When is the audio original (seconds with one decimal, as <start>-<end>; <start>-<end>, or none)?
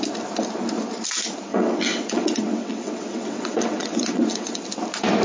0.0-1.5; 4.6-5.2